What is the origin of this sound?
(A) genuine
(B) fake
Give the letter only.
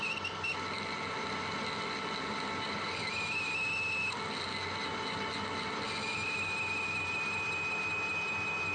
A